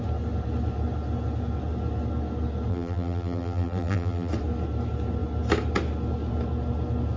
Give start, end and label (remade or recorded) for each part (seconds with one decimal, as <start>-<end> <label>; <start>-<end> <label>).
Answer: 0.0-2.7 recorded; 2.7-4.3 remade; 4.3-7.2 recorded